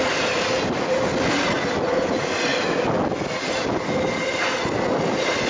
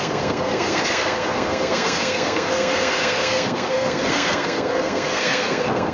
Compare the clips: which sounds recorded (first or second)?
first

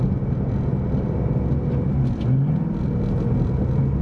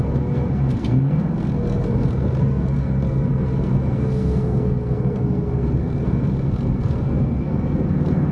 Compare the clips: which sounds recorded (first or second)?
first